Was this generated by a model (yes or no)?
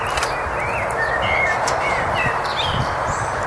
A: no